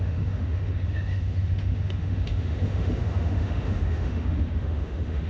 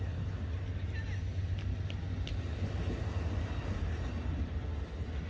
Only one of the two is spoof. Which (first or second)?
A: first